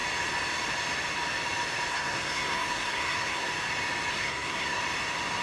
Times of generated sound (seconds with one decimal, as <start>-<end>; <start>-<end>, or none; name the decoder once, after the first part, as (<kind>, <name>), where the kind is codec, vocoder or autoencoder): 1.9-3.5 (codec, SNAC); 4.1-4.8